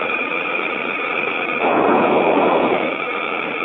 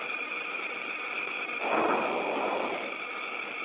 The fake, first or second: first